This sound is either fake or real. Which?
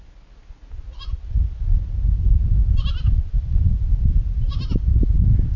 real